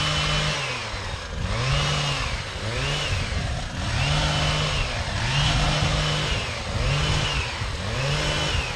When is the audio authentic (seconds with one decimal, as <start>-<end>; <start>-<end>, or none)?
0.0-8.8